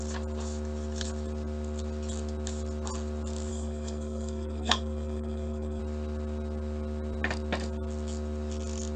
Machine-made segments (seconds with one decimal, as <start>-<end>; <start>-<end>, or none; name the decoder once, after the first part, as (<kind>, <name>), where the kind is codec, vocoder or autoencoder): 3.5-5.8 (codec, SNAC)